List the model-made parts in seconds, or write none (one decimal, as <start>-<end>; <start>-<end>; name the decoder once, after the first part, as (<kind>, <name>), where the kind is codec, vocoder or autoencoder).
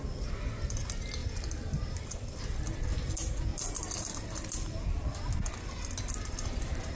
1.2-2.4 (vocoder, BigVGAN v2); 3.5-5.2